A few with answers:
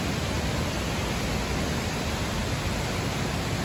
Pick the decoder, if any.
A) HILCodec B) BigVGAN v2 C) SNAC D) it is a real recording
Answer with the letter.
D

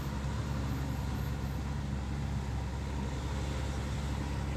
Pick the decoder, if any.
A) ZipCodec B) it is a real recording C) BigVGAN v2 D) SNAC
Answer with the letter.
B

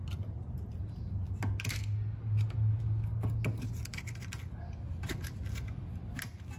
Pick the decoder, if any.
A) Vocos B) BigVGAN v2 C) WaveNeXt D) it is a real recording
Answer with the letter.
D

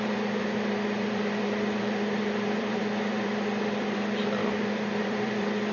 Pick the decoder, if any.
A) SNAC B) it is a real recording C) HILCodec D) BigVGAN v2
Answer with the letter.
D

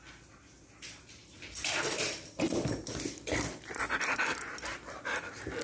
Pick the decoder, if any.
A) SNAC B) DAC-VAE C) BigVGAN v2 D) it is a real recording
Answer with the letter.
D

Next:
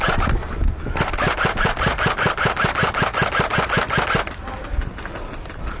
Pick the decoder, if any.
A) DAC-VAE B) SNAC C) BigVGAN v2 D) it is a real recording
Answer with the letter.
D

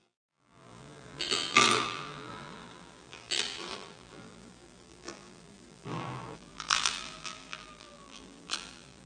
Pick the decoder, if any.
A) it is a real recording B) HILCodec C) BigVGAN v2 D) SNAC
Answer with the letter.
C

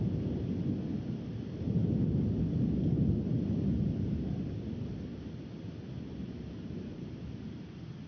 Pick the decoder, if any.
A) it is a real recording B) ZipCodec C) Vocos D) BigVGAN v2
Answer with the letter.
A